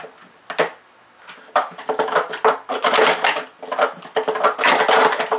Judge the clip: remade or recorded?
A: recorded